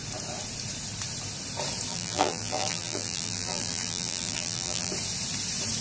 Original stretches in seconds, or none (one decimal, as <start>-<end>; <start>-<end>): 0.0-1.9; 4.9-5.8